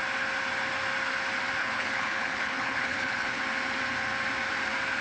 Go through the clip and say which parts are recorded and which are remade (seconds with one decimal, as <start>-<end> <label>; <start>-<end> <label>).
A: 0.0-1.6 recorded; 1.6-3.4 remade; 3.4-5.0 recorded